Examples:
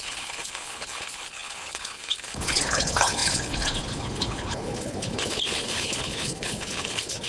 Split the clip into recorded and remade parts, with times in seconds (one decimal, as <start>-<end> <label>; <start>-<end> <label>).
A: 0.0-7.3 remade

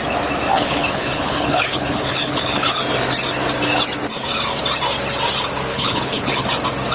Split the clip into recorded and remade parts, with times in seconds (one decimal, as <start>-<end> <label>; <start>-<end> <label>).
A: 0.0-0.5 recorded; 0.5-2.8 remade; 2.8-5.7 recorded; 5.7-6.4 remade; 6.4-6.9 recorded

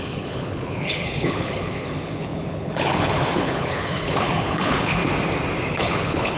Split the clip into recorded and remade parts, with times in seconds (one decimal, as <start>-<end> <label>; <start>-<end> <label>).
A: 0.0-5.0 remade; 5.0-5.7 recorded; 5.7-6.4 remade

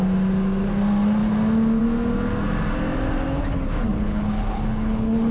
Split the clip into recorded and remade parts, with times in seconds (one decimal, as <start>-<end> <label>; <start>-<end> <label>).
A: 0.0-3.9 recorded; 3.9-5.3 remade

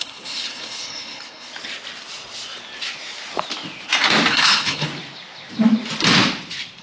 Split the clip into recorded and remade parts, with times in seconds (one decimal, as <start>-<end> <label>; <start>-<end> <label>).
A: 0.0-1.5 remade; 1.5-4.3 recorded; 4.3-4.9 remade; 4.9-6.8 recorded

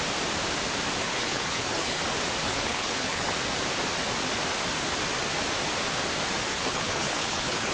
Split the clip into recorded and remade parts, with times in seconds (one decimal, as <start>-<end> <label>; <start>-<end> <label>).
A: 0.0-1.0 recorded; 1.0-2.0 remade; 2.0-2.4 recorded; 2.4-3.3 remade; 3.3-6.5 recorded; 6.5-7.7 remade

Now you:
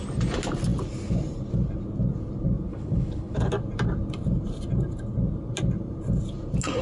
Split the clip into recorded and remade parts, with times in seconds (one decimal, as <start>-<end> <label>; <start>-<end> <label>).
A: 0.0-2.7 recorded; 2.7-3.5 remade; 3.5-6.8 recorded